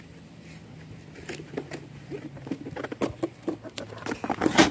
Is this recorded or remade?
recorded